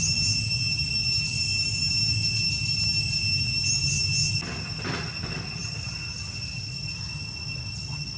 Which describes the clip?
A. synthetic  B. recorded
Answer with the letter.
B